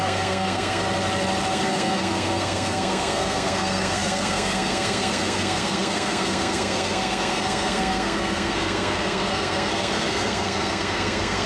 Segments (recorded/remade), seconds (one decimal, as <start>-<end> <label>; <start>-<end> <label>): 0.0-0.8 remade; 0.8-1.5 recorded; 1.5-11.5 remade